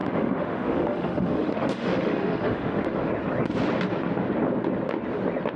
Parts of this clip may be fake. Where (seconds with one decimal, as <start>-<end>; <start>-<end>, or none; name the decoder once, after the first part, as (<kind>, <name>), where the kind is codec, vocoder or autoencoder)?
0.0-3.1 (autoencoder, DAC-VAE)